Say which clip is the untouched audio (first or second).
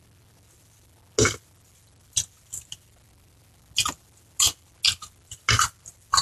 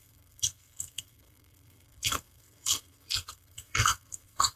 first